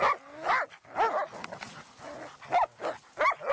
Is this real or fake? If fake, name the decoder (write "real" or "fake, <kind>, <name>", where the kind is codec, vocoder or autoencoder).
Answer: real